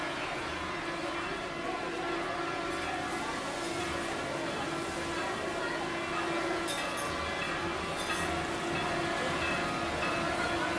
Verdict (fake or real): real